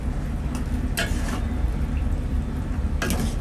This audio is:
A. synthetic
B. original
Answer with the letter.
B